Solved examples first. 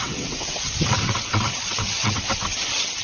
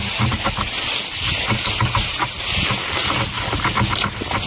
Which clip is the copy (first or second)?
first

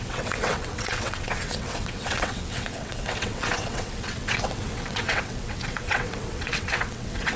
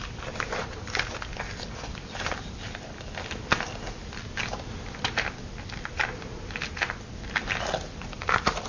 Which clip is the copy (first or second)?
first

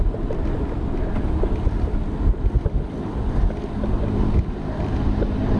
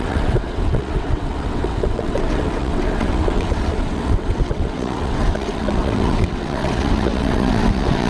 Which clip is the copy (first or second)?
second